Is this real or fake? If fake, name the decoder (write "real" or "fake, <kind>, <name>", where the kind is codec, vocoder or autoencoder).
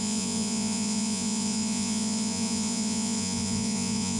fake, vocoder, Vocos